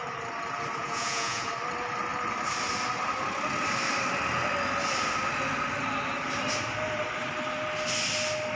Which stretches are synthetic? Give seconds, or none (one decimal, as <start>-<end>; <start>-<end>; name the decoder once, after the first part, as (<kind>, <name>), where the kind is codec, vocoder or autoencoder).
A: 0.8-1.5 (vocoder, Vocos)